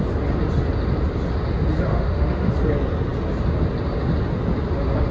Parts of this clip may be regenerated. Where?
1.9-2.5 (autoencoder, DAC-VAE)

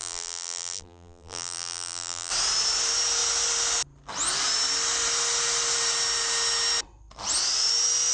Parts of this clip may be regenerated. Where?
0.0-2.3 (vocoder, BigVGAN v2)

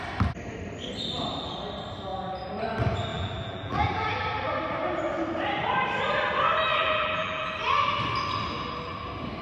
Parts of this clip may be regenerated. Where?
3.1-4.1 (vocoder, BigVGAN v2); 6.7-7.5